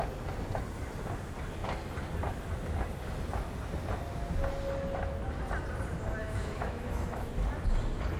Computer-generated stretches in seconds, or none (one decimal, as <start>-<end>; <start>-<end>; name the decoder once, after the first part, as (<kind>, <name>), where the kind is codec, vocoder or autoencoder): 6.2-7.3 (autoencoder, DAC-VAE)